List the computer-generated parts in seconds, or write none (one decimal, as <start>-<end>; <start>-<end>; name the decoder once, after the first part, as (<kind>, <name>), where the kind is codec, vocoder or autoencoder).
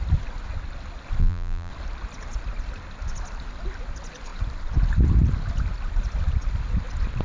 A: 1.2-1.7 (vocoder, BigVGAN v2)